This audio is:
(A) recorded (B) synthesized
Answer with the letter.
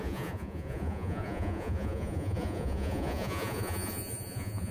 B